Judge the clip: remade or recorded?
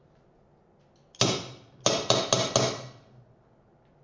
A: recorded